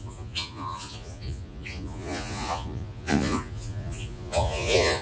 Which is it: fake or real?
fake